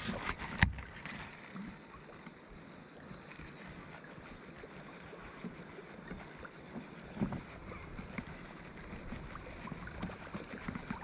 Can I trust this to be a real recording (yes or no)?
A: yes